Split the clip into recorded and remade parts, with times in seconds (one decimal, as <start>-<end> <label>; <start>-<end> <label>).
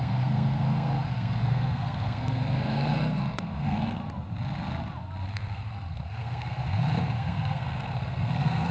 0.0-4.0 remade; 4.0-5.3 recorded; 5.3-8.7 remade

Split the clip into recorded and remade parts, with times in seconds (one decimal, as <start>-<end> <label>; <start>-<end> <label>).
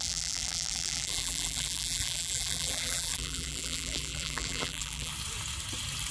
0.0-5.1 remade; 5.1-6.1 recorded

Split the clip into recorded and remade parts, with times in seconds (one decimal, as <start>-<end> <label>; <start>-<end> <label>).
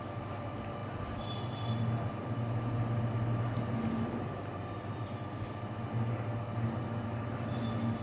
0.0-8.0 recorded